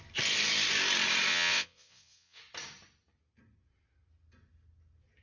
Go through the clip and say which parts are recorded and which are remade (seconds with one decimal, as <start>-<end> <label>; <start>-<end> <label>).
0.0-1.3 recorded; 1.3-2.4 remade; 2.4-5.2 recorded

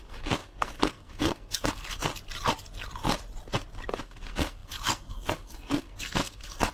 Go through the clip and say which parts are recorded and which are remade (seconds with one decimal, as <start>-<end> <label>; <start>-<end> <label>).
0.0-2.1 remade; 2.1-4.0 recorded; 4.0-6.7 remade

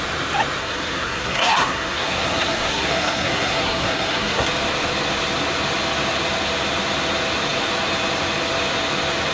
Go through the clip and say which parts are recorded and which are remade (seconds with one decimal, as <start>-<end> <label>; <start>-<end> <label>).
0.0-0.6 recorded; 0.6-4.5 remade; 4.5-9.3 recorded

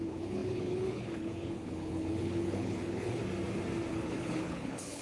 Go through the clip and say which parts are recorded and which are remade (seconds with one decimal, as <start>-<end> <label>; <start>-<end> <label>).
0.0-3.2 remade; 3.2-3.9 recorded; 3.9-5.0 remade